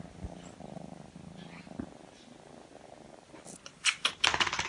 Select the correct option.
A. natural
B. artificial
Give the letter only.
A